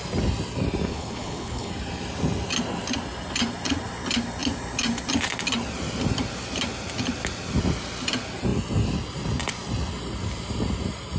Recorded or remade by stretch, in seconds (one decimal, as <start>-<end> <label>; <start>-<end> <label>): 0.0-0.9 recorded; 0.9-1.7 remade; 1.7-11.2 recorded